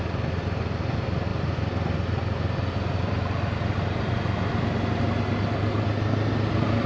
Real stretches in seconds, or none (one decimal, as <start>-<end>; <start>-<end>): 0.0-6.9